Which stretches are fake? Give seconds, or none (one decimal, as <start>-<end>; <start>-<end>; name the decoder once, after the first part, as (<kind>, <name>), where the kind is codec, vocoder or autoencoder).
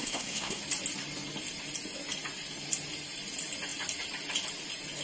0.0-0.6 (codec, SNAC)